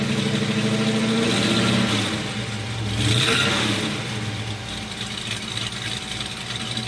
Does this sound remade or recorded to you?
recorded